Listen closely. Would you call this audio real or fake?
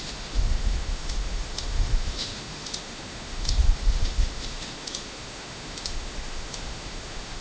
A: fake